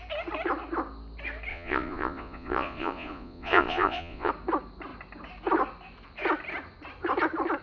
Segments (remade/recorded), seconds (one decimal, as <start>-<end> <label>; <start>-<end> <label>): 0.0-1.5 recorded; 1.5-4.3 remade; 4.3-7.6 recorded